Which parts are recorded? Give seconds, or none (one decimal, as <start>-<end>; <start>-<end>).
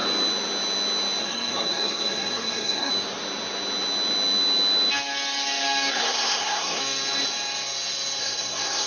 0.0-1.2; 2.9-5.9; 6.8-8.2